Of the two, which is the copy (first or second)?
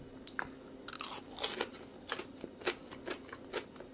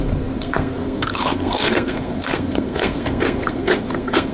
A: second